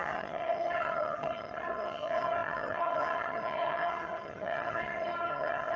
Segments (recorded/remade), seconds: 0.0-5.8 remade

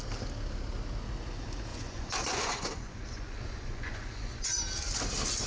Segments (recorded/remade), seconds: 0.0-1.7 recorded; 1.7-4.6 remade; 4.6-5.5 recorded

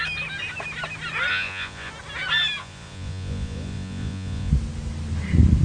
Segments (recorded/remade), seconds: 0.0-1.3 recorded; 1.3-1.9 remade; 1.9-2.6 recorded; 2.6-4.5 remade; 4.5-5.6 recorded

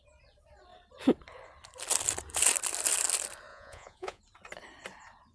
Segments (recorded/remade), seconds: 0.0-3.5 recorded; 3.5-4.2 remade; 4.2-5.3 recorded